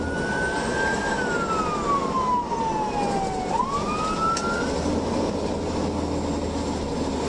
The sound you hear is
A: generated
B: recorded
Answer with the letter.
B